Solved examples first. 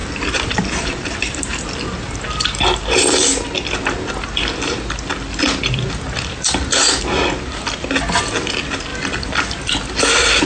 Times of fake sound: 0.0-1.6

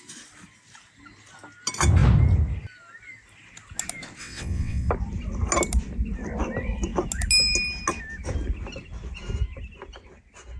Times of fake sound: 4.2-4.9

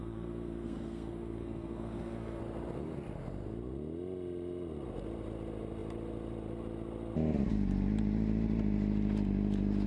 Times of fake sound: 0.0-2.4

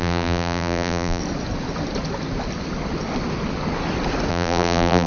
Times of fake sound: 0.0-1.2; 4.3-5.1